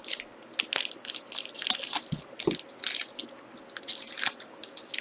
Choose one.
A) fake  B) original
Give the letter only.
B